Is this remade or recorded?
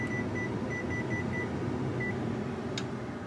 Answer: recorded